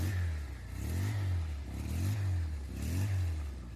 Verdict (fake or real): real